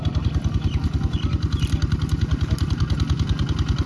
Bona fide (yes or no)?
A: yes